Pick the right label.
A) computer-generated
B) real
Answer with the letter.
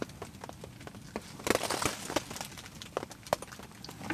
B